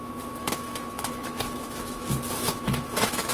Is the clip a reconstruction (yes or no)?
yes